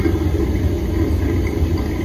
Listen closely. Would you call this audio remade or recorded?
recorded